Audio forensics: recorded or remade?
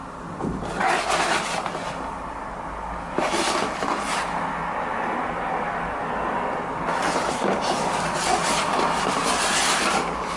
recorded